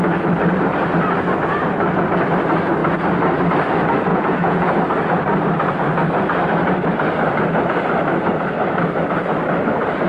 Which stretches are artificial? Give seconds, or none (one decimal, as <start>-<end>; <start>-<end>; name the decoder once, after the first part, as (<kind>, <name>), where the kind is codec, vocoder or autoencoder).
4.1-4.7 (vocoder, Vocos)